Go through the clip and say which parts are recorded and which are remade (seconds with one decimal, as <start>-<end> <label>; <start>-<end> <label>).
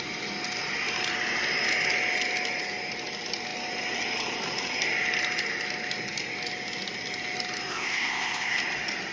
0.0-7.7 recorded; 7.7-8.6 remade; 8.6-9.1 recorded